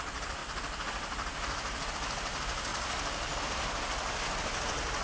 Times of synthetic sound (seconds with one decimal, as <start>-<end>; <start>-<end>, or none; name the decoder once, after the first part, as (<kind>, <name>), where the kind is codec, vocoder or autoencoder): none